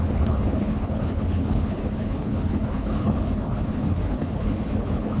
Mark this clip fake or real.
fake